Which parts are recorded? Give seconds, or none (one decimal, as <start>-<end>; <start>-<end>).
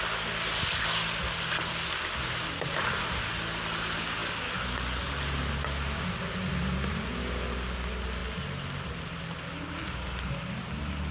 0.0-11.1